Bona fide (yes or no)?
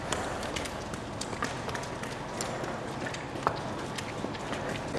yes